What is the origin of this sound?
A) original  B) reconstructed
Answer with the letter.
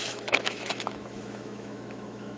B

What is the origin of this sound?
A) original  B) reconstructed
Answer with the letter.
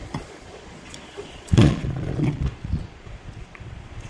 B